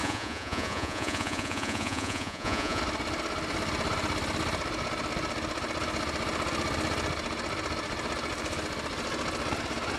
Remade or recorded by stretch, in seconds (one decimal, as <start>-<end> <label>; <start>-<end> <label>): 0.0-2.8 remade; 2.8-10.0 recorded